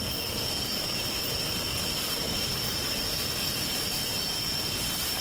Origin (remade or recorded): recorded